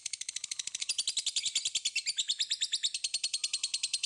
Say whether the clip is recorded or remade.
recorded